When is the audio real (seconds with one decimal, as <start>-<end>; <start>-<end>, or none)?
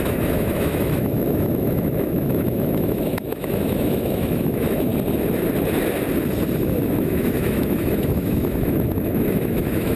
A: 4.9-6.6